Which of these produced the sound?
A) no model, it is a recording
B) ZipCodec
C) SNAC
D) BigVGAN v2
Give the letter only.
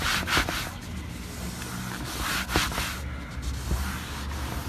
A